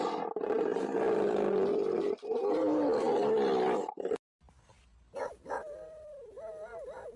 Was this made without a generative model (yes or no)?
yes